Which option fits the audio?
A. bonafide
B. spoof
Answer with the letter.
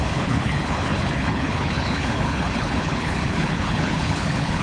B